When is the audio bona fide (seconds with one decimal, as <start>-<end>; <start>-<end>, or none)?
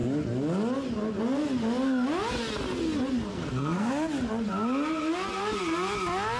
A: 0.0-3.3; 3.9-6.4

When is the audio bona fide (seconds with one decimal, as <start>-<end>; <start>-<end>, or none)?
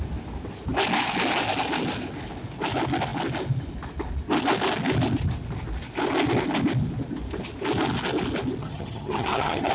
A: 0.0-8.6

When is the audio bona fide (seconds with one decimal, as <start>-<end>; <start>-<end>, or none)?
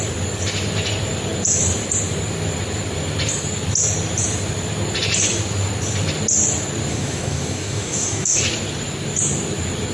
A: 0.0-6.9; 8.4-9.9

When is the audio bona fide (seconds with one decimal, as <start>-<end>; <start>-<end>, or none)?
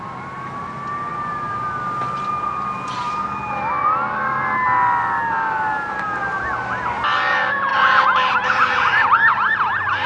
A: 0.0-7.7; 9.7-10.1